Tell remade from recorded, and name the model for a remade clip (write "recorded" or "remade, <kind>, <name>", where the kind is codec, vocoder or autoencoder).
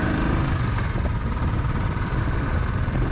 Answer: remade, vocoder, BigVGAN v2